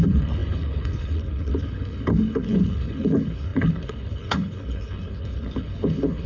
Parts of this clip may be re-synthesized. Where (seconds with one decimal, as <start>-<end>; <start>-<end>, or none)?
0.0-6.3